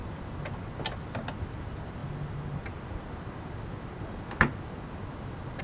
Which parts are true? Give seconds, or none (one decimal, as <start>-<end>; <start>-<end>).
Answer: 0.0-5.6